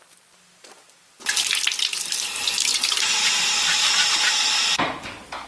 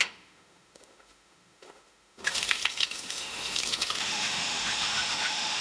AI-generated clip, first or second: second